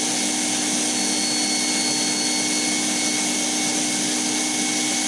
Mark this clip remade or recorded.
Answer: recorded